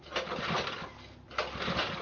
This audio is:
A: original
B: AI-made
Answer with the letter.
A